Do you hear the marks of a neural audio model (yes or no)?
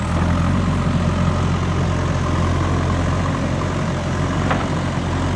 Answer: no